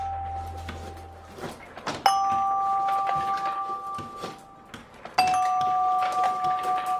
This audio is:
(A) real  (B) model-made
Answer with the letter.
A